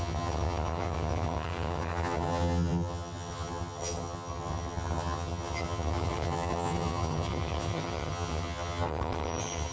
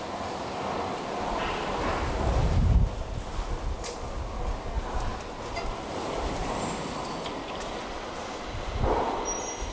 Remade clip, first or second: first